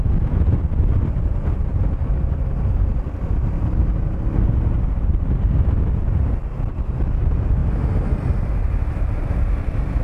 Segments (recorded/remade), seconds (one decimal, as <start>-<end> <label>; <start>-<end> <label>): 0.0-10.0 recorded